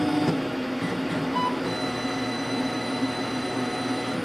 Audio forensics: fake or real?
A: fake